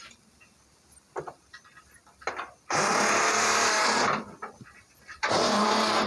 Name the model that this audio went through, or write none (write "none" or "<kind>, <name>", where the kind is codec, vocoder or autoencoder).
vocoder, BigVGAN v2